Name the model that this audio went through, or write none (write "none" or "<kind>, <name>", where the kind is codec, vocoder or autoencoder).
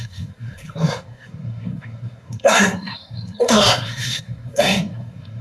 codec, SNAC